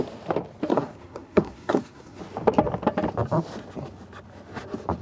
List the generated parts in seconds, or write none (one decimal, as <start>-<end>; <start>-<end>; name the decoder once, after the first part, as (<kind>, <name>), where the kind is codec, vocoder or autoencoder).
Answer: 0.7-2.2 (codec, SNAC)